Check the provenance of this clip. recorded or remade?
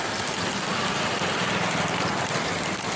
recorded